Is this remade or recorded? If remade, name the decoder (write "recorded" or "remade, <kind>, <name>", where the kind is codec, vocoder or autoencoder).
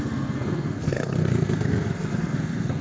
remade, codec, SNAC